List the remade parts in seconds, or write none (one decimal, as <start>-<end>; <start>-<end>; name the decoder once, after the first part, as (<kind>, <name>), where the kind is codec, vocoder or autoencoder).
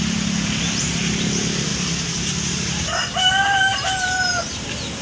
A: 0.0-3.0 (vocoder, BigVGAN v2); 3.6-5.0